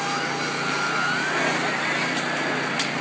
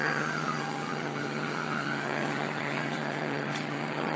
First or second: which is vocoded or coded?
second